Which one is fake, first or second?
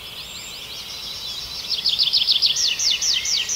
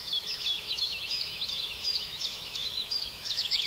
second